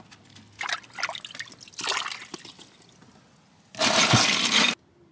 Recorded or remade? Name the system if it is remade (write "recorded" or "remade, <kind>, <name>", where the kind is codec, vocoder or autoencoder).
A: recorded